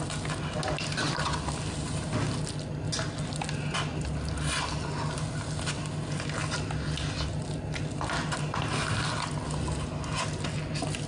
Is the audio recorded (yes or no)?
yes